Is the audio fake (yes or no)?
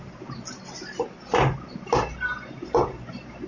no